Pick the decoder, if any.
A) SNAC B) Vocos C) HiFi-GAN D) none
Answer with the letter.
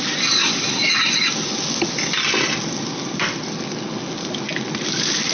D